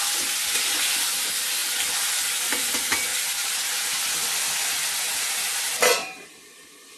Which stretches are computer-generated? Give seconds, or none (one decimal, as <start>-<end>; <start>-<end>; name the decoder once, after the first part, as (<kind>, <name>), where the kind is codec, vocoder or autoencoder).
6.0-7.0 (vocoder, BigVGAN v2)